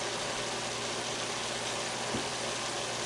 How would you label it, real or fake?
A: real